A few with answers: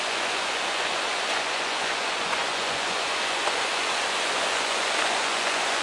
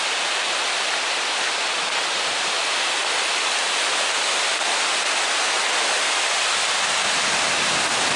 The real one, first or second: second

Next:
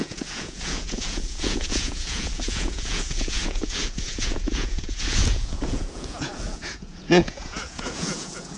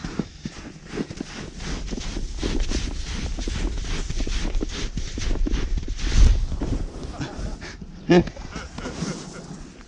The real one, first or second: second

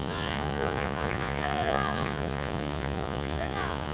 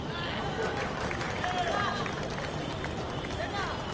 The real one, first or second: second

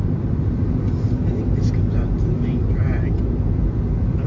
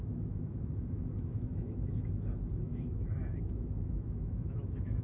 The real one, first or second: first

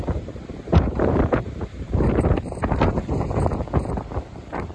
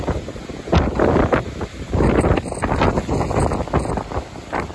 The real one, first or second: second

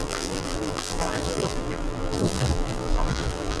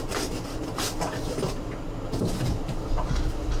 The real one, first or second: second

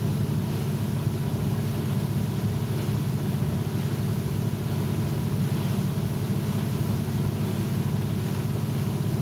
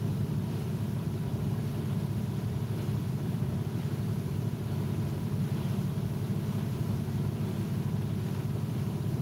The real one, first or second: first